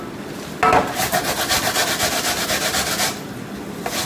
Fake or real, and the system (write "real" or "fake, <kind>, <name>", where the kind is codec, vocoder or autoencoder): real